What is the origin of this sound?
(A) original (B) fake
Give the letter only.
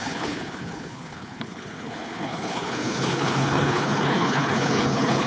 B